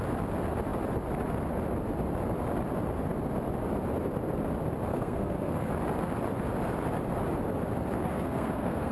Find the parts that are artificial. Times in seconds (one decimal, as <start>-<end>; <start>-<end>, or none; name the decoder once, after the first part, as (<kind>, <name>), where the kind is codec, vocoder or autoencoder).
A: 4.9-5.7 (codec, SNAC); 8.0-8.9